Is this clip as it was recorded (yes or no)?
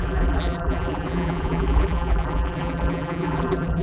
no